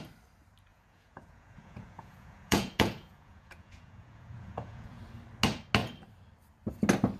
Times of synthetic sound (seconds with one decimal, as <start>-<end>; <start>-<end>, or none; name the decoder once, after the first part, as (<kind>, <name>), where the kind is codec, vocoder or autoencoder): 0.7-5.0 (vocoder, Vocos)